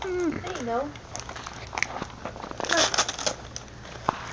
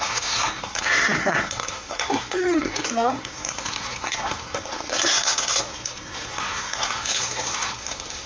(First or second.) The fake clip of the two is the second